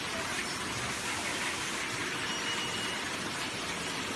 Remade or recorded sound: recorded